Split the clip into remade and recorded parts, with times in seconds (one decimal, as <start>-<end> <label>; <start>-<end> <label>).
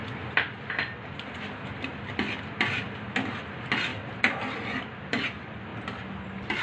0.0-6.6 recorded